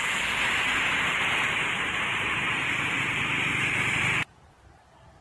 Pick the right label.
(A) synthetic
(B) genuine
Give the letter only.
A